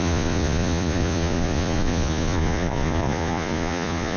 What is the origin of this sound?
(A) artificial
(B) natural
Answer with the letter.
A